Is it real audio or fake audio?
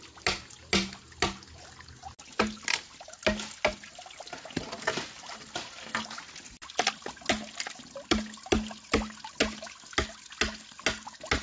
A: real